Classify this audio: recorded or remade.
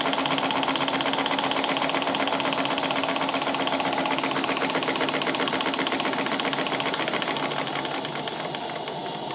recorded